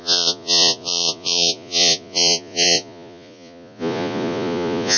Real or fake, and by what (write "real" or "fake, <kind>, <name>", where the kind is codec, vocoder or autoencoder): fake, vocoder, Vocos